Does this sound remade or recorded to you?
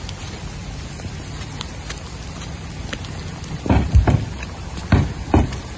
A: recorded